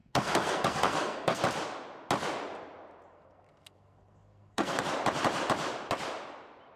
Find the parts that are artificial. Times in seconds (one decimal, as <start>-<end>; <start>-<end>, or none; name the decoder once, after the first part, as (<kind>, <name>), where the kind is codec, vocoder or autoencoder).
0.0-1.4 (codec, SNAC); 3.1-4.8